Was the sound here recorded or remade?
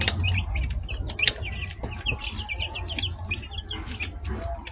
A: recorded